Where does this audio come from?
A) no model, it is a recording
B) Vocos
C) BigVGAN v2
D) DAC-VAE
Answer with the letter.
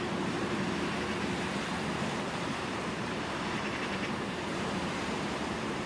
C